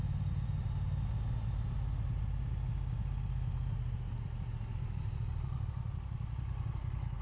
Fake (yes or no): no